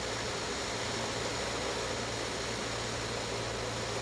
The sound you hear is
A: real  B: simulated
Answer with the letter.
A